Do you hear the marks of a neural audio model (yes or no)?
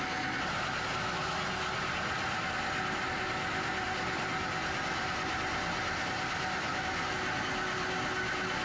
no